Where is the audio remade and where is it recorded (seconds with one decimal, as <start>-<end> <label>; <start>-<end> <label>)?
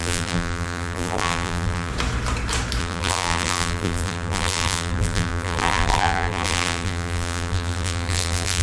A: 0.0-1.9 remade; 1.9-2.8 recorded; 2.8-8.6 remade